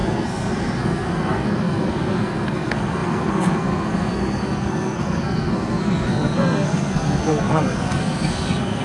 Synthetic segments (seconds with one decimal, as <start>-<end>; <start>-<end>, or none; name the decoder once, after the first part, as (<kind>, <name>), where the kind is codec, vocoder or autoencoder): 0.0-8.8 (codec, SNAC)